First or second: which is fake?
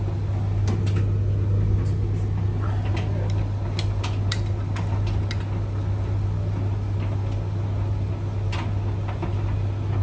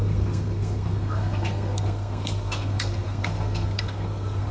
second